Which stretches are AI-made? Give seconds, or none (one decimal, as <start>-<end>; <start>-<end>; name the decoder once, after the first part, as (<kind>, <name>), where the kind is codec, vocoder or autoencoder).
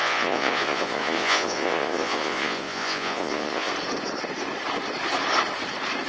0.0-3.7 (vocoder, Vocos)